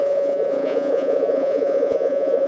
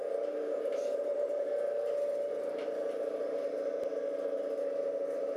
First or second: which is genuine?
second